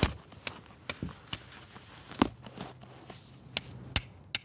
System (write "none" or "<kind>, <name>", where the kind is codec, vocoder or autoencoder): none